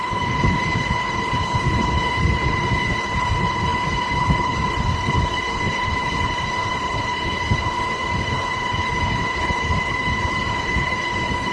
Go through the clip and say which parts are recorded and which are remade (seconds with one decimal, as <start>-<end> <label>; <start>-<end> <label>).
0.0-11.5 remade